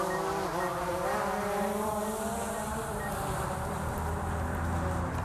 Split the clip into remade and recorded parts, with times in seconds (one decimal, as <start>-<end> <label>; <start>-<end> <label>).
0.0-0.7 recorded; 0.7-3.1 remade; 3.1-5.2 recorded